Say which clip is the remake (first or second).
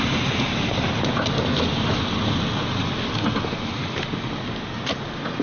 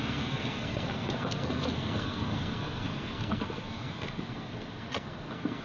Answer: second